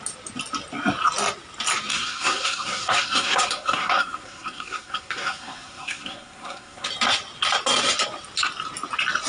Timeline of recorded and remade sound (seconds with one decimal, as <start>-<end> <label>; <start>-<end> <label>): 0.0-1.9 recorded; 1.9-6.9 remade; 6.9-9.3 recorded